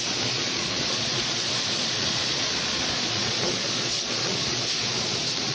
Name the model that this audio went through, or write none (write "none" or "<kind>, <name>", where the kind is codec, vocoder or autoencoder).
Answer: vocoder, Vocos